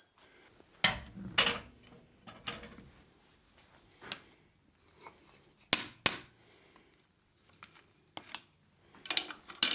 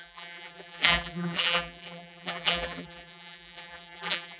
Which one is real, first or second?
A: first